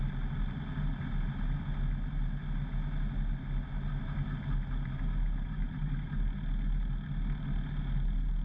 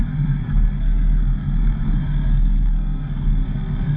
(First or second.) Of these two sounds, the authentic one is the first